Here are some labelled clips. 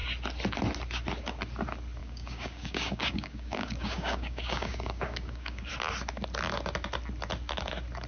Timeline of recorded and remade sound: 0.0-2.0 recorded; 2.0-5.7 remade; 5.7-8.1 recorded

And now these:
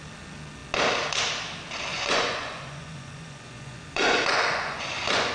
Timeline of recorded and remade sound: 0.0-1.9 recorded; 1.9-5.3 remade

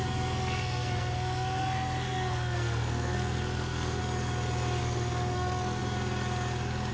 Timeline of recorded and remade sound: 0.0-4.0 remade; 4.0-4.8 recorded; 4.8-5.8 remade; 5.8-6.9 recorded

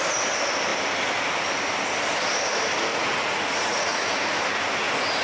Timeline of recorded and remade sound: 0.0-2.9 recorded; 2.9-4.2 remade; 4.2-5.2 recorded

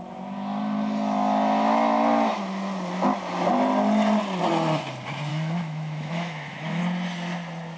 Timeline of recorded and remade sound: 0.0-5.3 recorded; 5.3-6.8 remade; 6.8-7.8 recorded

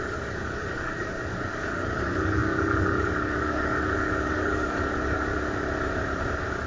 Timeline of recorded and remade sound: 0.0-5.3 remade; 5.3-6.7 recorded